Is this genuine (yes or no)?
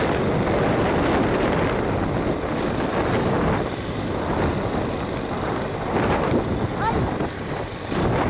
yes